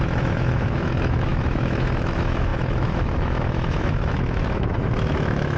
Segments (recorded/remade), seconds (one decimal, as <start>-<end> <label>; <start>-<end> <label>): 0.0-5.6 remade